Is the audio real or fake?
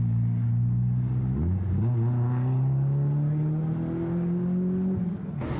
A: real